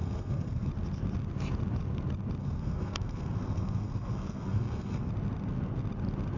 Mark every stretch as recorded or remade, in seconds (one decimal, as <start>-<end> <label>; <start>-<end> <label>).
0.0-0.7 remade; 0.7-2.4 recorded; 2.4-5.1 remade; 5.1-6.4 recorded